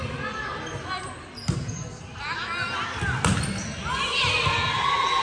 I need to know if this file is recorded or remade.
recorded